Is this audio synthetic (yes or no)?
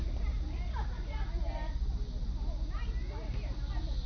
no